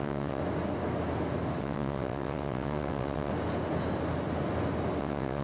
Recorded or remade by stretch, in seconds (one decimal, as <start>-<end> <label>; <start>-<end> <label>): 0.0-0.4 remade; 0.4-1.6 recorded; 1.6-3.3 remade; 3.3-5.0 recorded; 5.0-5.4 remade